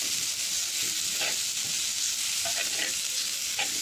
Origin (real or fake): real